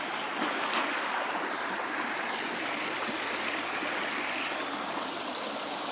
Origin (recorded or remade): recorded